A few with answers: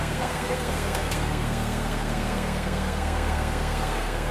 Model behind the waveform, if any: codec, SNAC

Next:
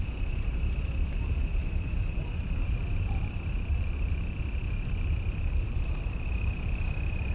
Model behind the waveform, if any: vocoder, BigVGAN v2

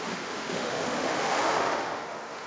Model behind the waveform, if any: autoencoder, DAC-VAE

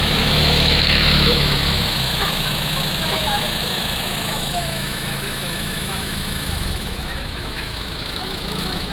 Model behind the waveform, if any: autoencoder, DAC-VAE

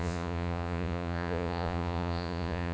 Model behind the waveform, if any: vocoder, Vocos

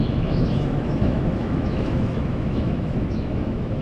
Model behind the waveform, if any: autoencoder, DAC-VAE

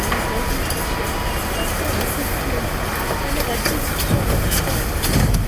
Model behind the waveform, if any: none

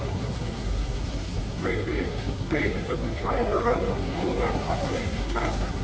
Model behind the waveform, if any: codec, SNAC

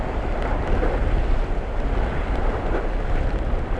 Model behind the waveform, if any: none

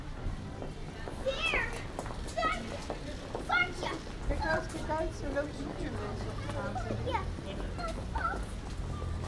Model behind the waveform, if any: none